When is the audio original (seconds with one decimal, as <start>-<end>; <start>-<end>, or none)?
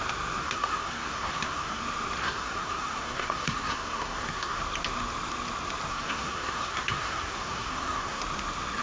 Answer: 0.0-0.4; 1.8-2.2; 4.6-5.9; 8.2-8.8